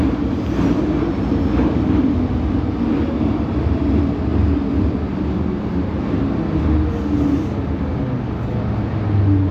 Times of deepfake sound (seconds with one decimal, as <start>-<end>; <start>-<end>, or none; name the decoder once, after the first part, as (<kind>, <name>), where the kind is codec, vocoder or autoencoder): none